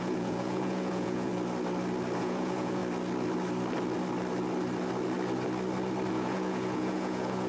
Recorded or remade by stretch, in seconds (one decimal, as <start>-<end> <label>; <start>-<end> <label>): 0.0-1.3 remade; 1.3-2.2 recorded; 2.2-2.8 remade; 2.8-6.1 recorded; 6.1-7.5 remade